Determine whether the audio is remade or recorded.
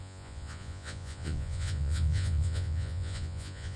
remade